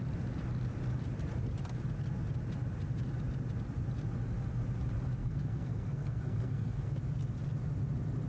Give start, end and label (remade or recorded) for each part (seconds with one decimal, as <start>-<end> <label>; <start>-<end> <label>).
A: 0.0-5.2 recorded; 5.2-6.9 remade; 6.9-8.3 recorded